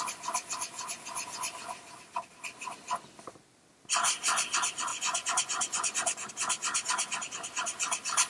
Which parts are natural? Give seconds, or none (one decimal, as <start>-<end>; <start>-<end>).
0.0-4.9; 6.3-8.3

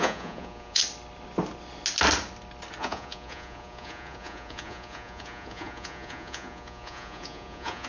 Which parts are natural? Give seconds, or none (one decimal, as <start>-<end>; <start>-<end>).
0.8-2.8

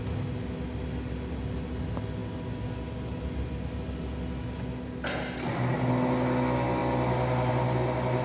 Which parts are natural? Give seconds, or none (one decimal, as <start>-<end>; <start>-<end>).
0.0-8.2

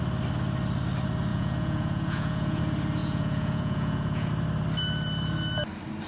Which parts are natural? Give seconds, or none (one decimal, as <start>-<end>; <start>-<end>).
0.0-1.3; 2.6-3.0; 4.3-6.1